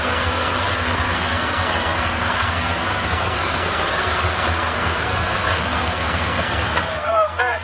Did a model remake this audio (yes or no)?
yes